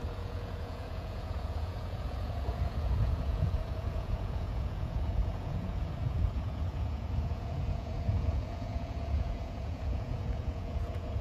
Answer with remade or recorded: remade